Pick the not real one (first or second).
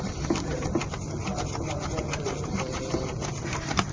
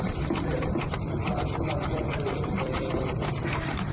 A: second